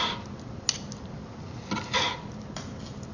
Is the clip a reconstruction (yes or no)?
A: no